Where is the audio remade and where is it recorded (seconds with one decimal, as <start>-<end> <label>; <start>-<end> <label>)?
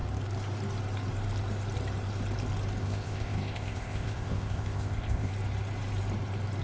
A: 0.0-2.8 recorded; 2.8-5.3 remade; 5.3-6.6 recorded